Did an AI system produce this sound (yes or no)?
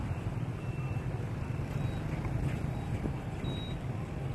no